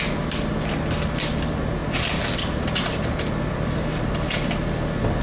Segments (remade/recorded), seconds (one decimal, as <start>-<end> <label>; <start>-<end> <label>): 0.0-5.2 recorded